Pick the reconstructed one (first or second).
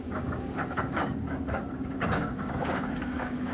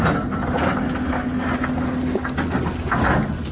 first